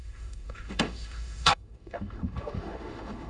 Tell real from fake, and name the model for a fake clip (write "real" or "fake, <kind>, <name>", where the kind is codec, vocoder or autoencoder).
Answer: fake, autoencoder, DAC-VAE